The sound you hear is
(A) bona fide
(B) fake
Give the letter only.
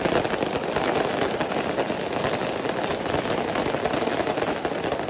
A